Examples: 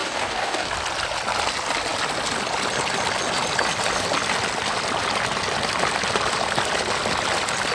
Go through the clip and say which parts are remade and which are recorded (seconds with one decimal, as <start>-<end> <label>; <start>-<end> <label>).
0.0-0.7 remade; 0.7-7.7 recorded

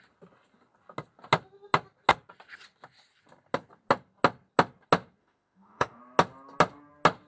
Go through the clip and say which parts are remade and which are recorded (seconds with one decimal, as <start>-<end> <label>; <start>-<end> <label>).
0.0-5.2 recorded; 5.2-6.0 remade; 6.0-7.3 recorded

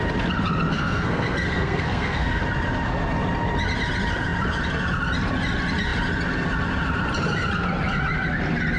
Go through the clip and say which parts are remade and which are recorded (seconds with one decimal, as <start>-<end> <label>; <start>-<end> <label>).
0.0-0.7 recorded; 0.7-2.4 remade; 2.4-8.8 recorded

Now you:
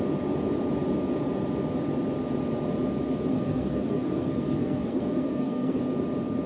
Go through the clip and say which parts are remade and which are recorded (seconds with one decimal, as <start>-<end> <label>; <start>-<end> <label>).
0.0-3.3 recorded; 3.3-5.8 remade; 5.8-6.5 recorded

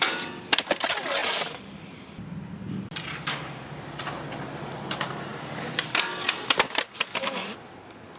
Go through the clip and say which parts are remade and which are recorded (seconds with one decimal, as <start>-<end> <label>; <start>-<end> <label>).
0.0-8.2 recorded

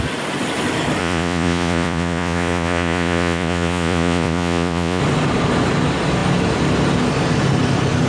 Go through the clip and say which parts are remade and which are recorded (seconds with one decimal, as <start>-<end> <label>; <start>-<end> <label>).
0.0-1.0 recorded; 1.0-5.0 remade; 5.0-8.1 recorded